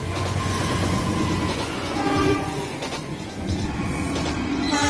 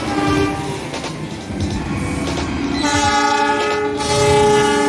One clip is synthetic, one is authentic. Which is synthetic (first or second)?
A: first